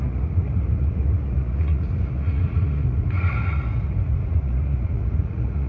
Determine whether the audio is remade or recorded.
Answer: remade